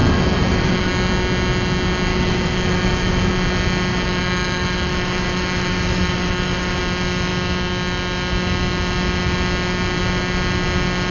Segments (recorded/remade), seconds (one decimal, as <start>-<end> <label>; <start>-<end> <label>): 0.0-0.9 remade; 0.9-2.1 recorded; 2.1-3.3 remade; 3.3-3.9 recorded; 3.9-6.8 remade; 6.8-11.1 recorded